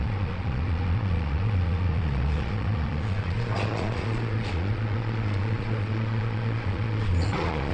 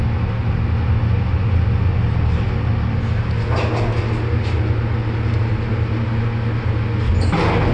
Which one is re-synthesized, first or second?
first